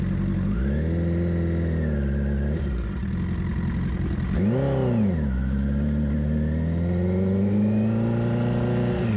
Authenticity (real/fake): real